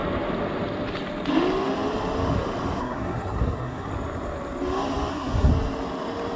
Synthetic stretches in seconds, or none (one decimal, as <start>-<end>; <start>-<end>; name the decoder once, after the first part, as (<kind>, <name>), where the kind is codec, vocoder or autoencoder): 2.8-3.9 (codec, SNAC); 5.1-5.5